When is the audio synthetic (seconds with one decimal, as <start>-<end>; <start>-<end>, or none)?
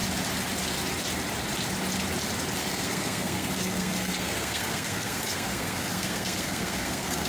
2.6-7.3